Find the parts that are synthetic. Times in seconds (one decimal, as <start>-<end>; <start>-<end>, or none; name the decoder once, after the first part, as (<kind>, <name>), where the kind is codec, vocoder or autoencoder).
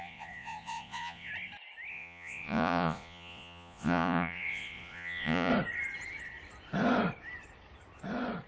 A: 0.0-1.3 (vocoder, Vocos); 1.9-5.5